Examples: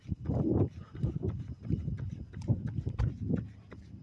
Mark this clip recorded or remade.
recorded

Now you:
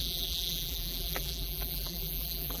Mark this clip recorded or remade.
remade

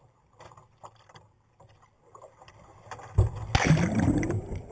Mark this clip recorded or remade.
recorded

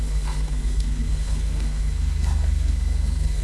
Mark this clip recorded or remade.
remade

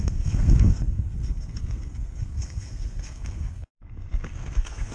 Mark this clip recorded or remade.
remade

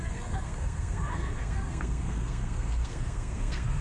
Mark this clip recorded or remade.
remade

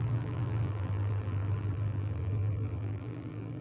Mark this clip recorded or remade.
remade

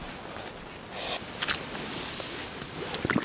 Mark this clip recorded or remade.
recorded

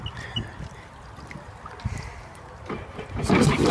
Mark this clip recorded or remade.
recorded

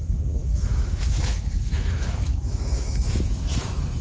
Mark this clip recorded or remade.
remade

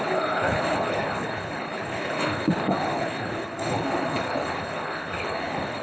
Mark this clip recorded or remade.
remade